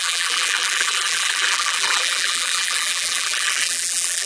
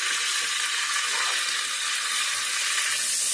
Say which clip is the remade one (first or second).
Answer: first